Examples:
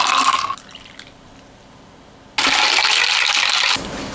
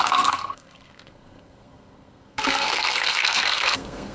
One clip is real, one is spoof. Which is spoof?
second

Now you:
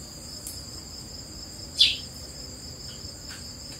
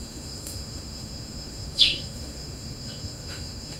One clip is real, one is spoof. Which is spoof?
second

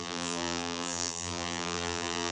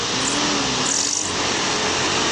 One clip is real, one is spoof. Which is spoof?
first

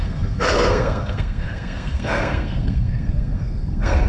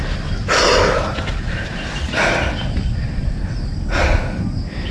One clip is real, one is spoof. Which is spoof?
first